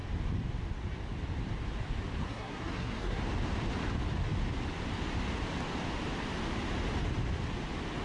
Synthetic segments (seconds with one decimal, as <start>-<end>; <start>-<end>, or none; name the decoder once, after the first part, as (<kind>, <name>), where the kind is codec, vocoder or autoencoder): 2.2-3.2 (codec, SNAC)